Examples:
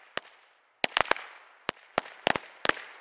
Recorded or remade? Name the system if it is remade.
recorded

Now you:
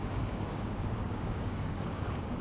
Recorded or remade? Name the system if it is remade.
remade, codec, DAC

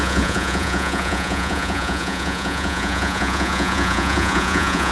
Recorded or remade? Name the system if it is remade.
remade, vocoder, Vocos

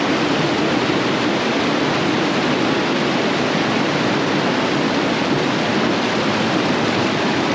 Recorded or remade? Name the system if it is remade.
recorded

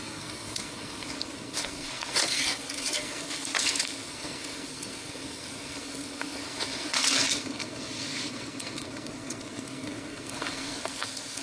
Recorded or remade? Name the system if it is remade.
remade, codec, SNAC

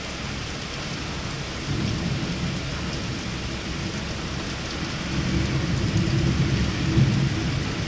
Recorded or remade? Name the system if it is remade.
recorded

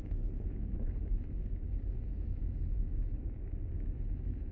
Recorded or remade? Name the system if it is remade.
remade, autoencoder, DAC-VAE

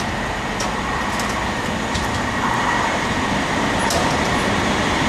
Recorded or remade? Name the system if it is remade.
recorded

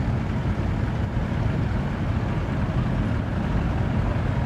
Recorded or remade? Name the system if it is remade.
recorded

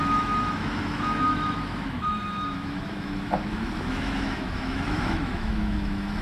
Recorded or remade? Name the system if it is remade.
remade, autoencoder, DAC-VAE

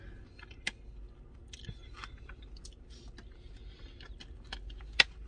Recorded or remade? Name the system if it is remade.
recorded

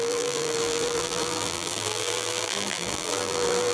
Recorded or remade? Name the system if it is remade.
remade, vocoder, BigVGAN v2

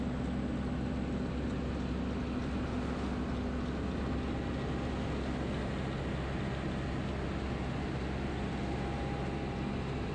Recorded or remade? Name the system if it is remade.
recorded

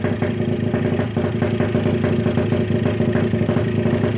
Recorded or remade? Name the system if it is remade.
recorded